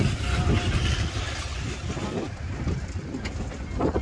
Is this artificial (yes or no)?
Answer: no